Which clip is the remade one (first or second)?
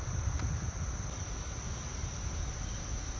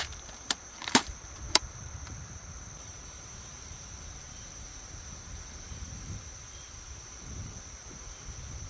second